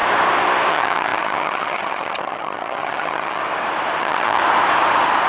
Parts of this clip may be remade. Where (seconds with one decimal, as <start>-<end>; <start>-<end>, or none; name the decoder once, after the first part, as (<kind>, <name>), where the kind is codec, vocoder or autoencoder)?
0.7-3.4 (vocoder, HiFi-GAN); 4.0-4.4